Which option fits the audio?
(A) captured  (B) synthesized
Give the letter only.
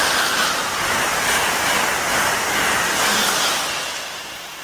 A